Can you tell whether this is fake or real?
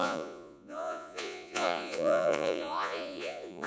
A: fake